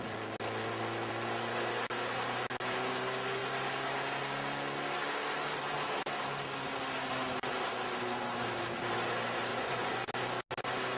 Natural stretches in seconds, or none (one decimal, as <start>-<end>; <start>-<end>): 0.0-9.5; 10.1-11.0